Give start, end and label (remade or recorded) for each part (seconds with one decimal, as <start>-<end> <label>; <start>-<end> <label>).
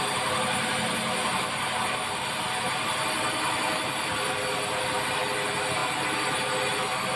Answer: 0.0-7.2 recorded